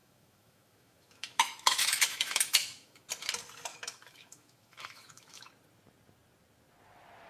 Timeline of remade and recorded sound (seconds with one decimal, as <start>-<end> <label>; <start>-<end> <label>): 0.0-3.1 remade; 3.1-3.7 recorded; 3.7-5.5 remade; 5.5-7.3 recorded